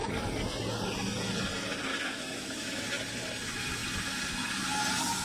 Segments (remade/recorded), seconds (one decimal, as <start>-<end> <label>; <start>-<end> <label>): 0.0-1.9 recorded; 1.9-2.9 remade; 2.9-5.2 recorded